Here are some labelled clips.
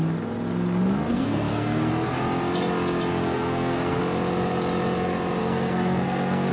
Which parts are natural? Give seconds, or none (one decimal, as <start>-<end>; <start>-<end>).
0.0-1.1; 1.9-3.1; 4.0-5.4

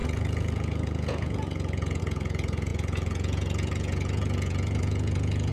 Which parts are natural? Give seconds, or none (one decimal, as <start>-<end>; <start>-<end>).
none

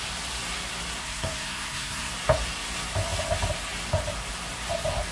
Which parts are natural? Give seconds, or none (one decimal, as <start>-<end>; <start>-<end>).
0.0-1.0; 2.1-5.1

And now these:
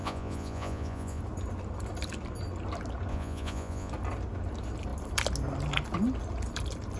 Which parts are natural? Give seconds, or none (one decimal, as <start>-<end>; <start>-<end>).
1.2-3.1; 3.9-7.0

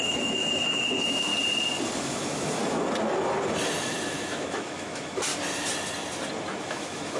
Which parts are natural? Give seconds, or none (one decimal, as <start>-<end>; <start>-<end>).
1.3-2.0; 2.6-3.8; 5.3-6.6

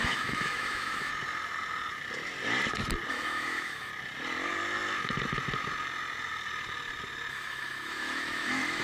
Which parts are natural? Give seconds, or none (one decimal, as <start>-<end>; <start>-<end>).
1.1-3.1; 3.9-7.3